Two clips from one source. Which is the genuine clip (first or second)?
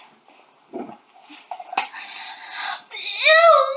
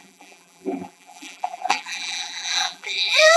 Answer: first